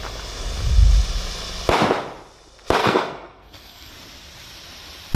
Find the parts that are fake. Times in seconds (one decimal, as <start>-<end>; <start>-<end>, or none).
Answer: 2.8-3.9